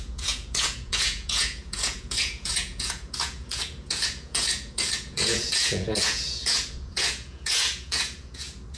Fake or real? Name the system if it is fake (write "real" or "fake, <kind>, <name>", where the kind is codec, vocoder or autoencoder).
fake, vocoder, Vocos